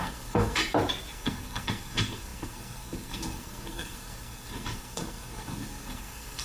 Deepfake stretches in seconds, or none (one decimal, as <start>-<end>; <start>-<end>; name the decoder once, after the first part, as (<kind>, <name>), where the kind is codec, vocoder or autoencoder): 0.0-0.6 (codec, SNAC); 1.1-6.4